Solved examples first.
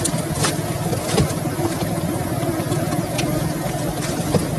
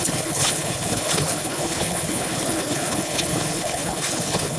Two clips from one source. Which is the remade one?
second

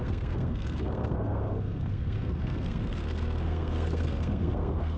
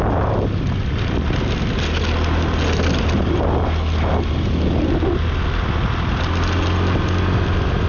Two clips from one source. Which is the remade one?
first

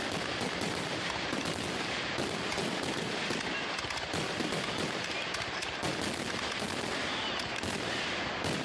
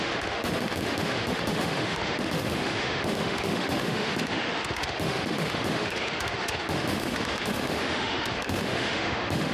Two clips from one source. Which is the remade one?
second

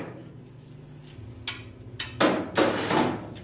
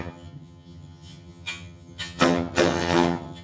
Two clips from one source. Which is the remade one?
second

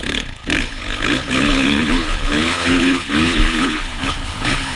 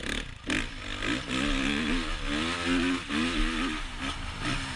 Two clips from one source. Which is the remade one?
first